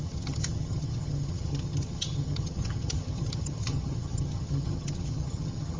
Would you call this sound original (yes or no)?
no